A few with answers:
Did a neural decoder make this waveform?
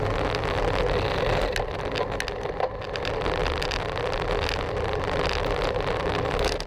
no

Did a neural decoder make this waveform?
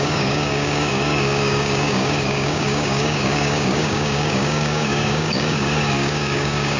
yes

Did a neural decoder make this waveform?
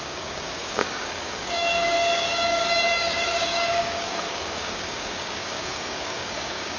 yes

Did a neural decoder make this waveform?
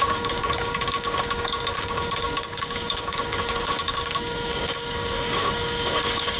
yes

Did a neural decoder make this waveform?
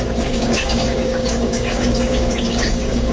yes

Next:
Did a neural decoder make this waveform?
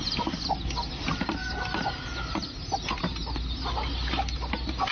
no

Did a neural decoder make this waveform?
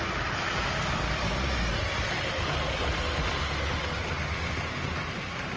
no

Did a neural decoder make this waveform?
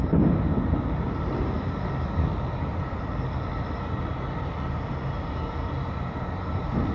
no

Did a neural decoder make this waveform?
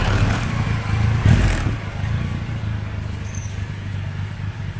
yes